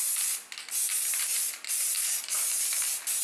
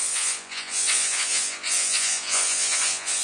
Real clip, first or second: first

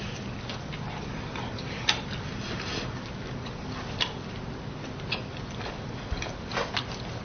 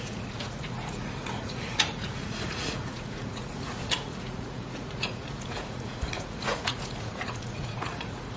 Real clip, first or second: first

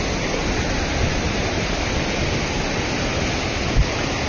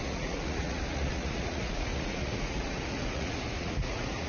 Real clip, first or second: first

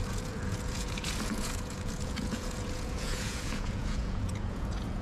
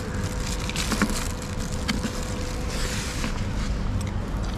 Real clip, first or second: second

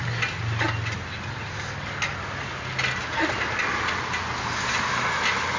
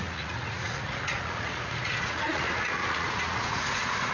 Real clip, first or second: first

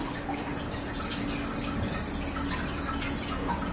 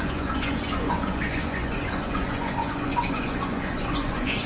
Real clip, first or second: first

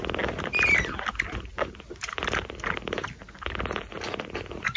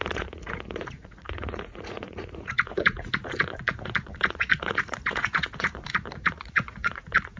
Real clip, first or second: first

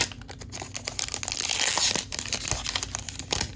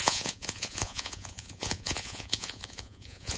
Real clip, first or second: first